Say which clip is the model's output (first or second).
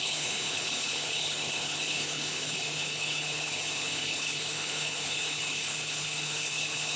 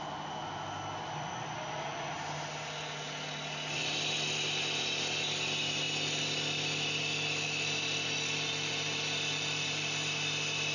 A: first